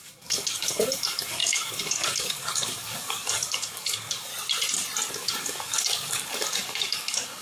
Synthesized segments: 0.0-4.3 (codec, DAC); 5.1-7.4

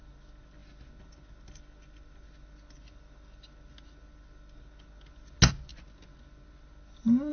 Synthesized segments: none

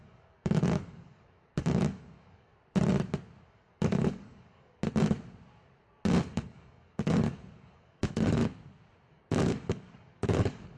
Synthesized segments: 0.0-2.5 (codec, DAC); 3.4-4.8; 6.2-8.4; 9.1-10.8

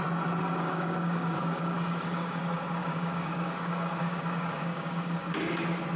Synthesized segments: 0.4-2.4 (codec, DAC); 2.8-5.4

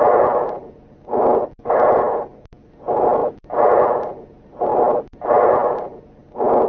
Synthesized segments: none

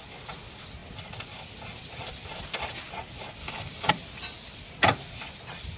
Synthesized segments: 3.4-3.9 (codec, DAC)